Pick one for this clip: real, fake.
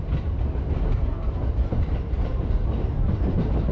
real